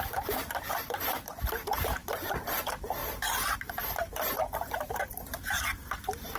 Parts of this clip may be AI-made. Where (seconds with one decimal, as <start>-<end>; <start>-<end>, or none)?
0.0-6.4